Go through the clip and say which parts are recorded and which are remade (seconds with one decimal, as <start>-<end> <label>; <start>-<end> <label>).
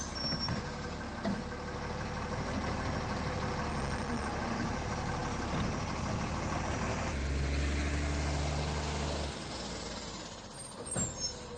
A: 0.0-3.7 recorded; 3.7-4.3 remade; 4.3-11.6 recorded